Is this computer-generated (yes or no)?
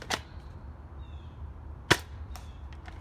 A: no